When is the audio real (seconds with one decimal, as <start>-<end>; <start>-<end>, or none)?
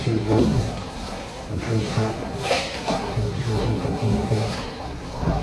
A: none